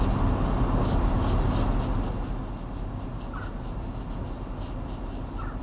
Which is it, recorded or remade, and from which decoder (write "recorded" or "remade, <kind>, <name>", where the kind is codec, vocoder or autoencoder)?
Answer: recorded